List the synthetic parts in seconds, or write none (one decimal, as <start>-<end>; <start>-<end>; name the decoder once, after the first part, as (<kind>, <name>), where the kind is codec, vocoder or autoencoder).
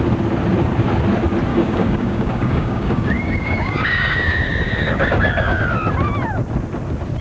1.5-5.6 (codec, DAC)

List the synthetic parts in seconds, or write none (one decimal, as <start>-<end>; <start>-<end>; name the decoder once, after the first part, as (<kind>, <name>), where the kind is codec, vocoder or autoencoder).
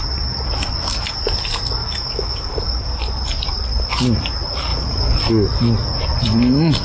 1.8-2.5 (autoencoder, DAC-VAE)